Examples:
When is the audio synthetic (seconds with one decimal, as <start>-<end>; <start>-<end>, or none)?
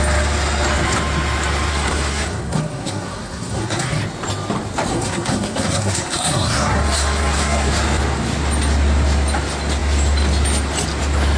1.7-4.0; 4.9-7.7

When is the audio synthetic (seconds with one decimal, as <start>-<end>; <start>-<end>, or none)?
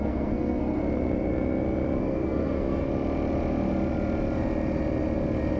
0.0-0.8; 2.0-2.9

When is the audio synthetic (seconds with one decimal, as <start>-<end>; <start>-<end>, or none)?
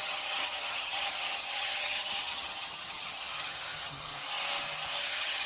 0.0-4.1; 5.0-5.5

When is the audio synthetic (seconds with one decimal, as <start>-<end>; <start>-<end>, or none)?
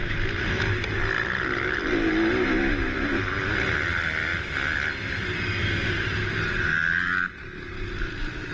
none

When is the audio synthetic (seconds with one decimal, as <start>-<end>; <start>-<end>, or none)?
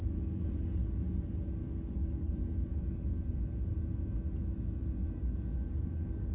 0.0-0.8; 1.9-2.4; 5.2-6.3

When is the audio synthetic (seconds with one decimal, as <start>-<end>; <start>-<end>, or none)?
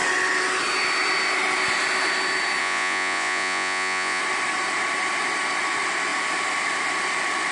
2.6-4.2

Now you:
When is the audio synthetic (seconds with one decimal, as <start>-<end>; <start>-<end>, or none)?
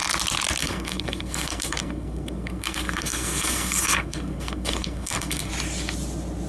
0.6-5.5